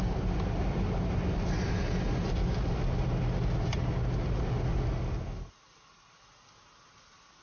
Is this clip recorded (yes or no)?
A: yes